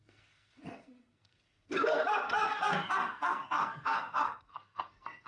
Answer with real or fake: fake